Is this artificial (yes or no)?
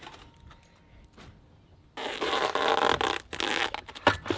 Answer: no